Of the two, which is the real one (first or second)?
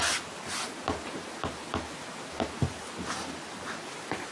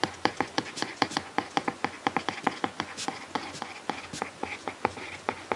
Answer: first